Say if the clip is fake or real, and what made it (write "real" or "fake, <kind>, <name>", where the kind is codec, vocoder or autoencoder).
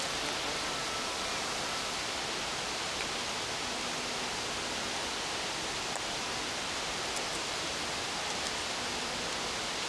real